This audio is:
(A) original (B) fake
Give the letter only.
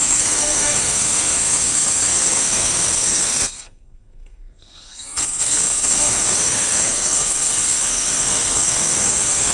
B